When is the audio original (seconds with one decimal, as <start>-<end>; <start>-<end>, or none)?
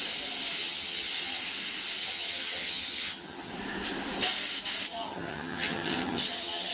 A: 0.0-0.6; 1.4-2.0; 3.5-4.9